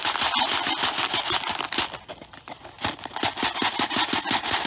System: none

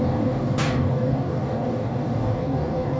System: codec, DAC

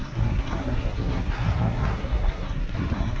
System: codec, SNAC